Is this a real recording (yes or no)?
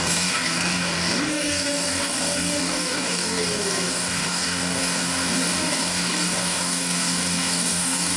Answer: no